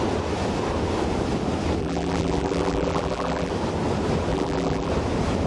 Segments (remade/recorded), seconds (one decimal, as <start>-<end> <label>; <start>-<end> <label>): 0.0-1.8 recorded; 1.8-3.5 remade; 3.5-4.3 recorded; 4.3-4.9 remade; 4.9-5.5 recorded